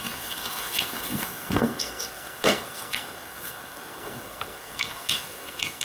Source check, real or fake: fake